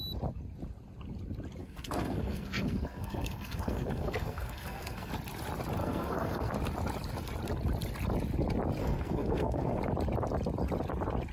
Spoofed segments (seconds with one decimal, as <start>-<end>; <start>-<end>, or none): 1.6-5.1; 5.8-6.5; 8.8-9.8

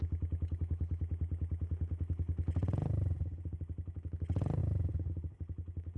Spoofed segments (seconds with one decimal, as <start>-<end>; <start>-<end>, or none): none

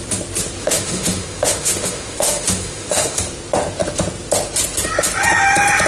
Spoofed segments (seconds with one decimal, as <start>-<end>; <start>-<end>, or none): 0.6-3.2

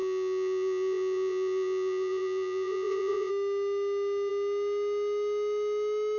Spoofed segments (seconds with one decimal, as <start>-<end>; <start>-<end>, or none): 0.0-3.3

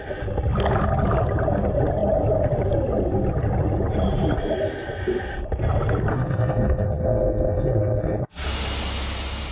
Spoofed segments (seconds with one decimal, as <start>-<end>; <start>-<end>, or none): 6.1-8.5

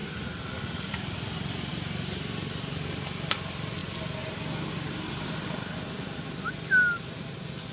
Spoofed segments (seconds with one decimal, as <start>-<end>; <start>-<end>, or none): none

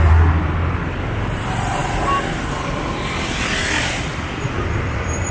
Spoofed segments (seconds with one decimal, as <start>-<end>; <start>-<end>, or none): none

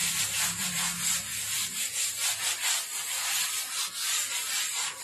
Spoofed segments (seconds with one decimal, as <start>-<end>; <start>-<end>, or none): 0.6-1.3; 4.3-5.0